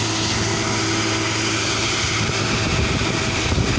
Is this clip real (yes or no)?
yes